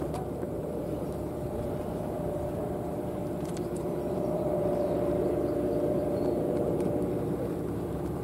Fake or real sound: fake